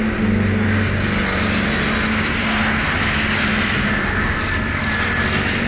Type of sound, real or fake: real